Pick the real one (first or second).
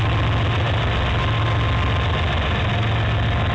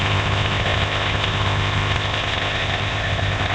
first